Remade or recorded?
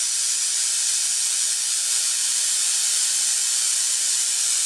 recorded